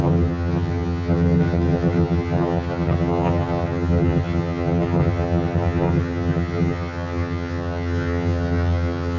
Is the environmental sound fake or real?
fake